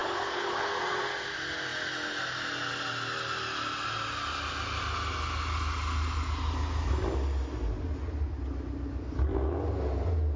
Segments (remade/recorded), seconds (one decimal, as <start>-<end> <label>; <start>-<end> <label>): 0.0-0.7 remade; 0.7-10.4 recorded